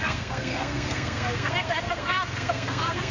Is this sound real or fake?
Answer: fake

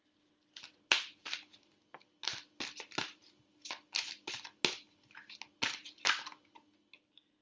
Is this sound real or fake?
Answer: real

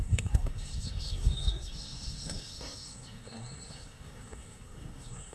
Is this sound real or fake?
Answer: fake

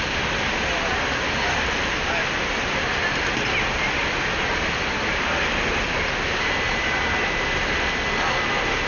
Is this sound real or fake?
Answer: real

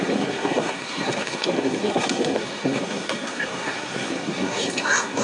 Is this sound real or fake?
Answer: fake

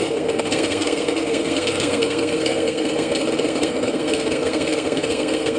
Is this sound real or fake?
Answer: fake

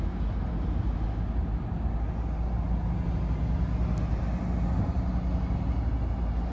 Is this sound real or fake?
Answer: real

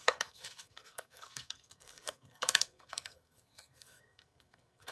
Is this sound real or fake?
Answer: fake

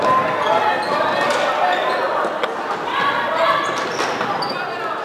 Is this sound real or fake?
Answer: real